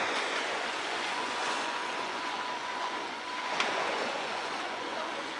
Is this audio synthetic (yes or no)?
yes